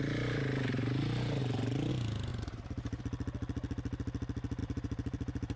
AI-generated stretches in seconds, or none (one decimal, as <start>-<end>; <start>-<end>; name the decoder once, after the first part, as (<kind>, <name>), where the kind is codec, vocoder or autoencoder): 1.4-1.9 (vocoder, BigVGAN v2); 2.3-3.0; 4.6-5.6